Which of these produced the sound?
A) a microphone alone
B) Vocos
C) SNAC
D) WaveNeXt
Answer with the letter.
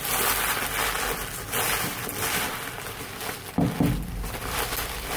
A